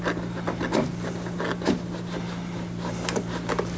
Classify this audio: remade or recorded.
recorded